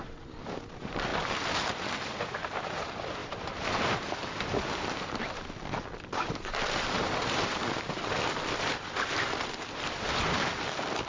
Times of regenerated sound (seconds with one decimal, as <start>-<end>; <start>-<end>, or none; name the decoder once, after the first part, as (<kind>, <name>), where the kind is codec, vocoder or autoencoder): 1.1-2.4 (vocoder, BigVGAN v2); 3.2-5.3